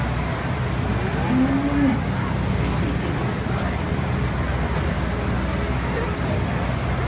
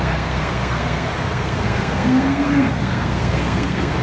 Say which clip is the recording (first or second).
first